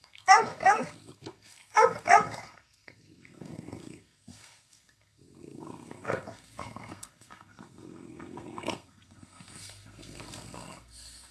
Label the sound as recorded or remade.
remade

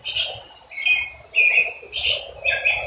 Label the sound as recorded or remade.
recorded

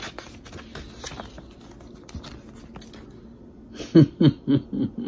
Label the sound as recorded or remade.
recorded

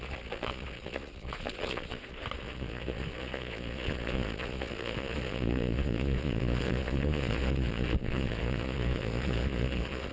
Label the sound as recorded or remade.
remade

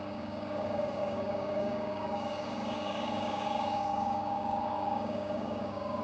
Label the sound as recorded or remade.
remade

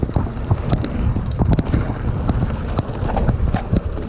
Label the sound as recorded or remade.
recorded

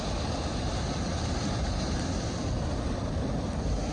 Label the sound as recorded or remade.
recorded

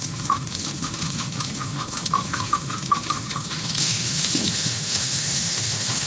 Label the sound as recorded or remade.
remade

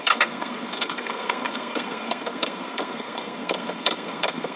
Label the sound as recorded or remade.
remade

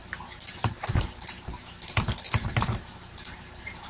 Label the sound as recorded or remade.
remade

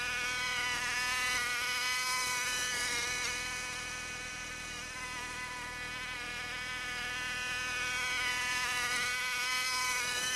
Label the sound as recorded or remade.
recorded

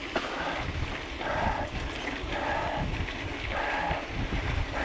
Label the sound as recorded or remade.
remade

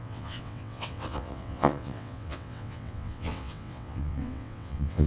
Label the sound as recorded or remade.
remade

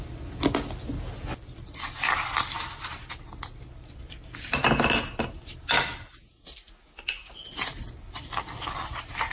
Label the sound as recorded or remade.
recorded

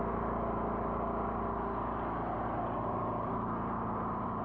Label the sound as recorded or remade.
recorded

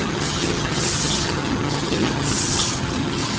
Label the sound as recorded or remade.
remade